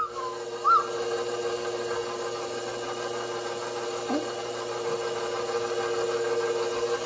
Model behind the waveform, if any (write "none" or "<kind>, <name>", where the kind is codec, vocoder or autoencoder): none